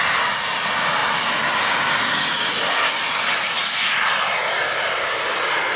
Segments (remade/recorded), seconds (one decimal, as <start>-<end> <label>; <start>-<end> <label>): 0.0-5.8 recorded